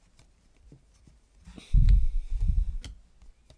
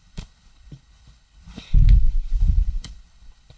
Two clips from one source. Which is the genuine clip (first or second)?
first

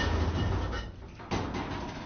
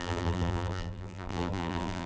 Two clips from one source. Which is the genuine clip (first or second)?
first